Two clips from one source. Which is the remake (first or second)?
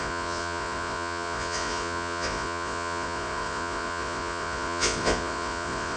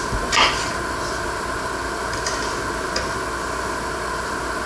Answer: first